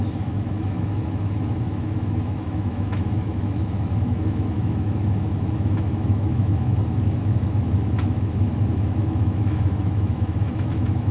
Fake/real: fake